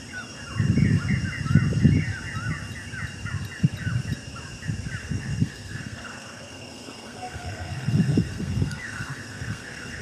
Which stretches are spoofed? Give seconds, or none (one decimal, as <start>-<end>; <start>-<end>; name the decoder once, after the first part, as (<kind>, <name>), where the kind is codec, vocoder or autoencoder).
5.0-10.0 (codec, SNAC)